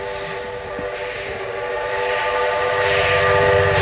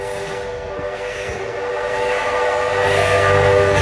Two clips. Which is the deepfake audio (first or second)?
second